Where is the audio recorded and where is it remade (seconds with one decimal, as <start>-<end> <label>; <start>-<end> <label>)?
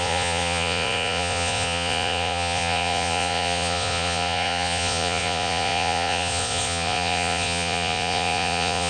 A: 0.0-8.9 remade